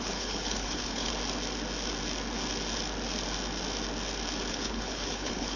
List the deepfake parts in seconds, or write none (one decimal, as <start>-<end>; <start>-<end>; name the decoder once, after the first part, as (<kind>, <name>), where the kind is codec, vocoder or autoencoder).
0.0-1.1 (codec, HILCodec); 4.5-5.6